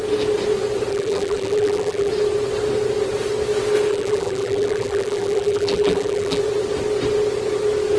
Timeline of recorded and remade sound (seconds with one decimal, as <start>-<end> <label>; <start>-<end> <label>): 0.0-0.9 recorded; 0.9-2.1 remade; 2.1-3.9 recorded; 3.9-6.4 remade; 6.4-8.0 recorded